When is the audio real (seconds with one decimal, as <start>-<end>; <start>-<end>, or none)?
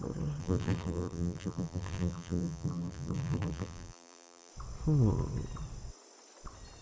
0.0-0.4; 4.5-6.8